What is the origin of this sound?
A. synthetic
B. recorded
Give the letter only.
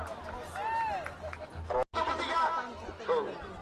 B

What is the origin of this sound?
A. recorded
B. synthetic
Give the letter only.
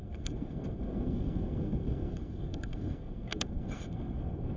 B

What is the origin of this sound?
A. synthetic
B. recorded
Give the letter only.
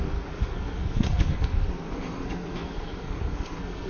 A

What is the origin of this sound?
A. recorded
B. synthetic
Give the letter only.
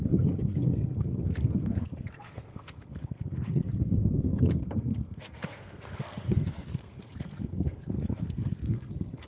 B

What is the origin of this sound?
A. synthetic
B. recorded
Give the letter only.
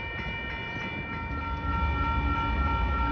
B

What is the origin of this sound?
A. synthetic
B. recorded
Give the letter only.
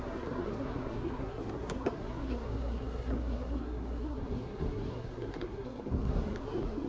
A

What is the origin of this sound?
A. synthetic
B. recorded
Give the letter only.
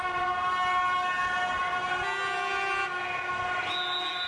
B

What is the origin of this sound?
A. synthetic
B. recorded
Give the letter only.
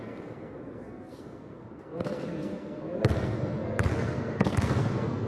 A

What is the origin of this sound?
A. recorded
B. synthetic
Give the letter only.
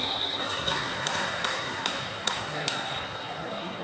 B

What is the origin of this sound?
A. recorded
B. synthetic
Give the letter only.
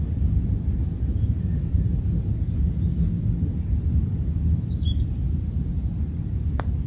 A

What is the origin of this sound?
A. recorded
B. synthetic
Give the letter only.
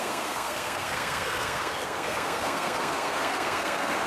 B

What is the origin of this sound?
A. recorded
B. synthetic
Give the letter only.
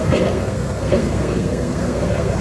B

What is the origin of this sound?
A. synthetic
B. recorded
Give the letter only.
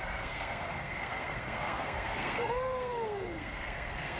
A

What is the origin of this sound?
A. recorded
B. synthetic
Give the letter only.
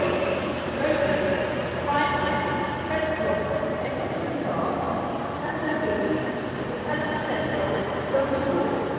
A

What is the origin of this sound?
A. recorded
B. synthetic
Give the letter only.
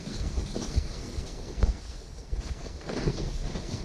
B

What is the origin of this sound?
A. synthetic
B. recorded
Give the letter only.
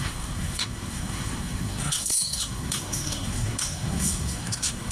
A